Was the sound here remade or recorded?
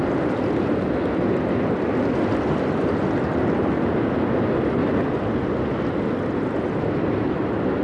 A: recorded